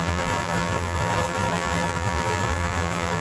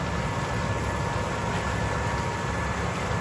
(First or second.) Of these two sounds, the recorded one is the second